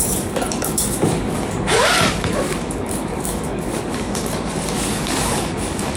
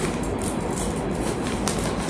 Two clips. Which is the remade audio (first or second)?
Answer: first